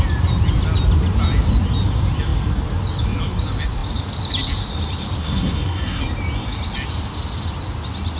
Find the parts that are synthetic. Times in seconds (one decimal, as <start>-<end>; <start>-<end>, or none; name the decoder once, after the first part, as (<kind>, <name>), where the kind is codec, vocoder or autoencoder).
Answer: 5.2-6.0 (codec, SNAC)